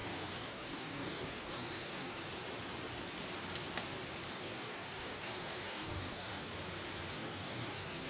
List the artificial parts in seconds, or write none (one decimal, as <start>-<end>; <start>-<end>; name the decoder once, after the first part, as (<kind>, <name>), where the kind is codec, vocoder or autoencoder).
0.0-2.2 (codec, DAC); 4.3-6.5; 7.1-8.1